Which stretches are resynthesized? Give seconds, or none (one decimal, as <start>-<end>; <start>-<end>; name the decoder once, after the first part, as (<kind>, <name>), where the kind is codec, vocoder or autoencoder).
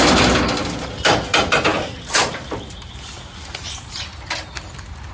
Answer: none